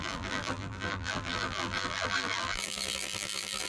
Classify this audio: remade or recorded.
remade